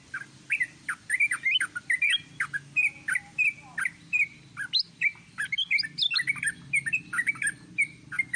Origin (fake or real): real